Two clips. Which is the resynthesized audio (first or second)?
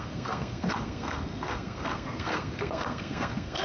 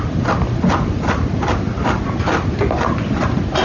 first